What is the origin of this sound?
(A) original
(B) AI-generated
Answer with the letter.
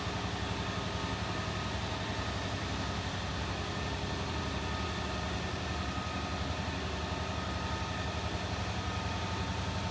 A